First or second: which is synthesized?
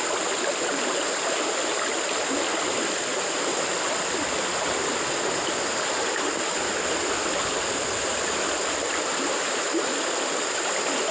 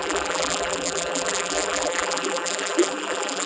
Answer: second